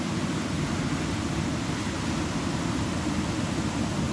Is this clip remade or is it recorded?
recorded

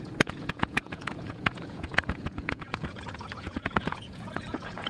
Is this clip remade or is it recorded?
remade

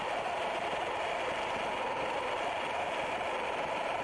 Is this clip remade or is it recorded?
recorded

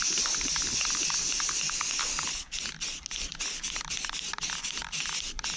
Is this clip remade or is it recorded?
recorded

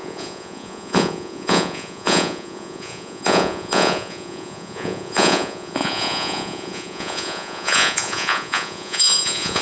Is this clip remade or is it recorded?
remade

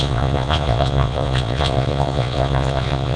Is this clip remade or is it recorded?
remade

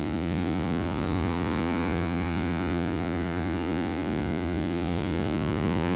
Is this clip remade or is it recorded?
remade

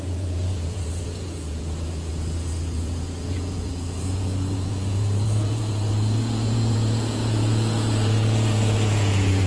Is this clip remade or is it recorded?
remade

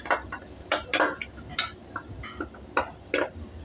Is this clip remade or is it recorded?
recorded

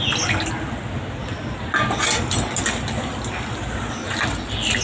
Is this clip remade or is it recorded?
recorded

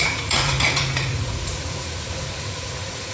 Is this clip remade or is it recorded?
remade